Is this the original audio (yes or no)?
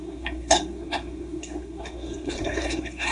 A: no